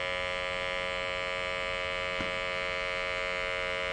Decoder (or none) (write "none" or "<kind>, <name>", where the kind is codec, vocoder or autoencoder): none